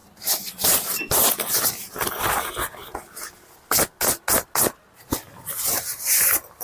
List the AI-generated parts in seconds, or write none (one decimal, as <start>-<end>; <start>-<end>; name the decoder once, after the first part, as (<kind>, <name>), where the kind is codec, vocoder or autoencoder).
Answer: none